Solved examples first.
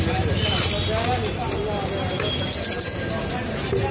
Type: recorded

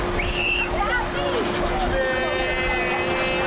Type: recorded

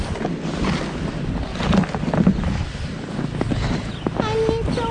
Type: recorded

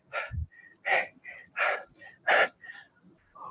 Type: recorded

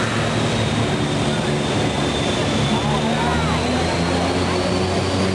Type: recorded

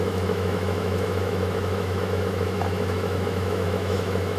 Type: remade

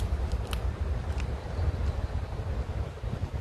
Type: recorded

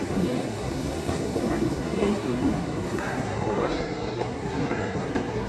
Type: remade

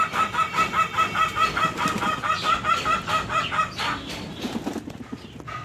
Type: recorded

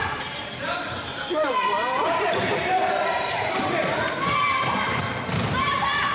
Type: remade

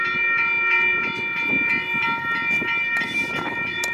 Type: recorded